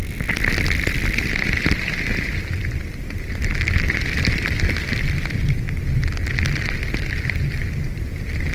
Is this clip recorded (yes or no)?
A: yes